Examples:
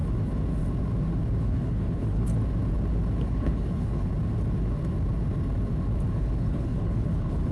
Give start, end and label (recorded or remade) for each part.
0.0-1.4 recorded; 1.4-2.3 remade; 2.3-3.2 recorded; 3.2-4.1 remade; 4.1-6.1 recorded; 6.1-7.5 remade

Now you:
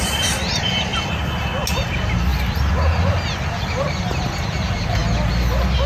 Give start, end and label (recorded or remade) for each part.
0.0-0.9 remade; 0.9-1.7 recorded; 1.7-5.0 remade; 5.0-5.9 recorded

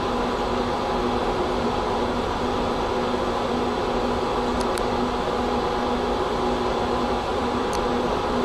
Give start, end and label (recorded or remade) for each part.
0.0-1.2 recorded; 1.2-2.4 remade; 2.4-7.3 recorded; 7.3-7.8 remade; 7.8-8.4 recorded

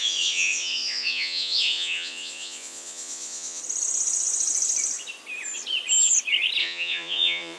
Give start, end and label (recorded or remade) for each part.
0.0-3.6 remade; 3.6-6.6 recorded; 6.6-7.6 remade